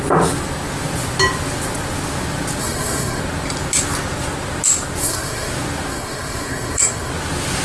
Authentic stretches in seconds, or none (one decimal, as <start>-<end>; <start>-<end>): 0.0-2.6; 3.2-5.0; 5.5-5.9; 7.1-7.6